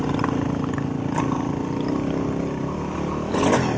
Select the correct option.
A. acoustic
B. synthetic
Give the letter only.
A